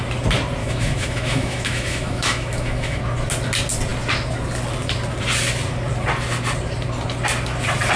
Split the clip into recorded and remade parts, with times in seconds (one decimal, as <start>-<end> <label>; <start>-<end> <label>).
0.0-0.6 recorded; 0.6-3.0 remade; 3.0-8.0 recorded